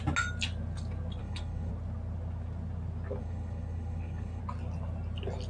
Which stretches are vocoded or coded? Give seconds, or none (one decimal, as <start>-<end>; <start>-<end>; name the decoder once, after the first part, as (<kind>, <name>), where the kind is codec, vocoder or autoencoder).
1.2-1.7 (codec, HILCodec); 3.2-4.4